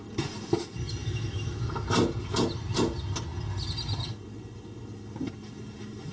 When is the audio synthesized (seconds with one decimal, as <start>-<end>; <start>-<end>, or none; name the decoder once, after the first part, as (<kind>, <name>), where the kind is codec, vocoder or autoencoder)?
1.0-1.8 (autoencoder, DAC-VAE)